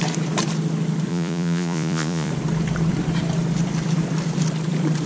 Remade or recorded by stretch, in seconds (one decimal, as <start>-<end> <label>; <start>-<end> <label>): 0.0-1.1 recorded; 1.1-2.3 remade; 2.3-5.1 recorded